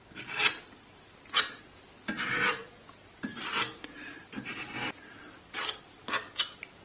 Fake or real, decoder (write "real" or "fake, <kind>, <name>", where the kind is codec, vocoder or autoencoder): real